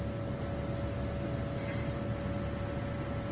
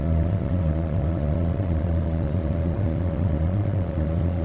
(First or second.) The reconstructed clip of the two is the second